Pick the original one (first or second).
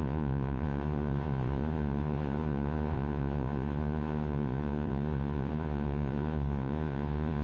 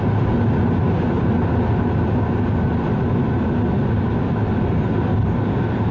second